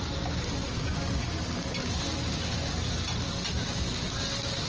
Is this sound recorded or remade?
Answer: recorded